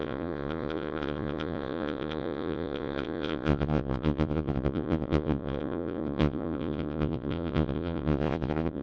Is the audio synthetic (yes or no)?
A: yes